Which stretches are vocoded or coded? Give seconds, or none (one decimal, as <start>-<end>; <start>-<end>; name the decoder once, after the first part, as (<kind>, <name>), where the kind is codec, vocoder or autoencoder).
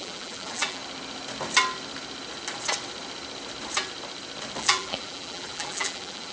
0.0-0.8 (vocoder, BigVGAN v2); 4.6-6.3